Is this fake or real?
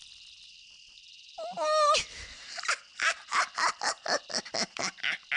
real